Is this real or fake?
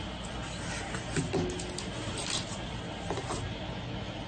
real